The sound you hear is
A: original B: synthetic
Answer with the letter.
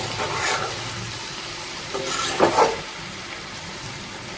A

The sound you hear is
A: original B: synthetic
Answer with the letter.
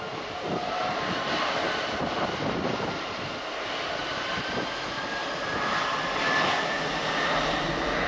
A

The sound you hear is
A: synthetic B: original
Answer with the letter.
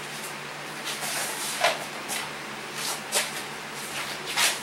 A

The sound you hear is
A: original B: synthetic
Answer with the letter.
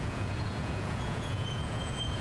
B